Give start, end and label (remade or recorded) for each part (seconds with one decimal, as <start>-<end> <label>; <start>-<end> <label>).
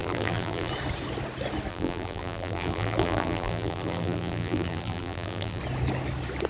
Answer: 0.0-0.7 remade; 0.7-1.7 recorded; 1.7-5.6 remade; 5.6-6.5 recorded